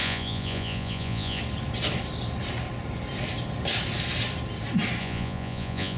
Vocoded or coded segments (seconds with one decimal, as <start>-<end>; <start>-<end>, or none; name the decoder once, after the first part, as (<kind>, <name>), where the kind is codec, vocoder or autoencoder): 0.0-1.4 (vocoder, Vocos); 5.0-6.0